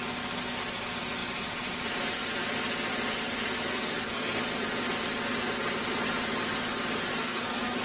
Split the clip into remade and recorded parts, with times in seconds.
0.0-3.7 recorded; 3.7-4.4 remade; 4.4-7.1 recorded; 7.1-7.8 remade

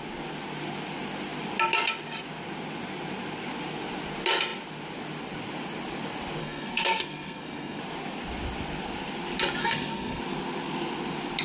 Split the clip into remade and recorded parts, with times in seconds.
0.0-6.4 recorded; 6.4-7.8 remade; 7.8-9.6 recorded; 9.6-10.2 remade; 10.2-11.4 recorded

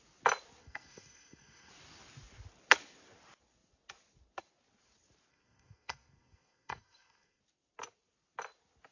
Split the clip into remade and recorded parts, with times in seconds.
0.0-0.6 recorded; 0.6-1.7 remade; 1.7-5.3 recorded; 5.3-7.4 remade; 7.4-8.9 recorded

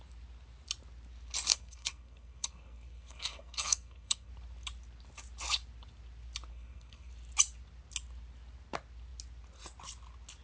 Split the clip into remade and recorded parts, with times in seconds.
0.0-1.5 recorded; 1.5-4.3 remade; 4.3-6.5 recorded; 6.5-7.1 remade; 7.1-10.4 recorded

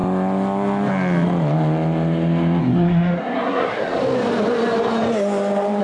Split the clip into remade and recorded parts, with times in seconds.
0.0-2.6 recorded; 2.6-4.0 remade; 4.0-5.8 recorded